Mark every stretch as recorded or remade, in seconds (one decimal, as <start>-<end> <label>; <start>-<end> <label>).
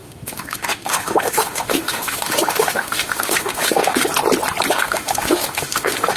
0.0-4.0 remade; 4.0-4.7 recorded; 4.7-6.2 remade